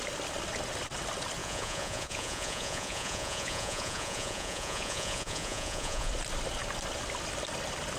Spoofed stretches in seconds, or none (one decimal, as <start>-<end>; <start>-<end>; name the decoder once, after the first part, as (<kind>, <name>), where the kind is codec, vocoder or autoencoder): 1.4-6.1 (vocoder, Vocos)